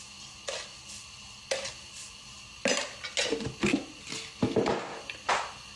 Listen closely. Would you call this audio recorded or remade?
recorded